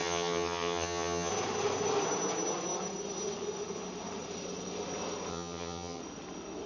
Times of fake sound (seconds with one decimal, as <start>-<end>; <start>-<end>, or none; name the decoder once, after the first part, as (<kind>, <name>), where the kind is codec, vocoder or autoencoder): 0.0-1.3 (vocoder, HiFi-GAN); 5.3-6.0